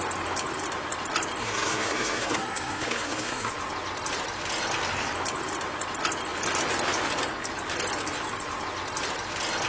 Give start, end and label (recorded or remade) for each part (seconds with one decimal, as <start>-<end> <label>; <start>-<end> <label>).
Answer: 0.0-1.4 recorded; 1.4-3.5 remade; 3.5-9.7 recorded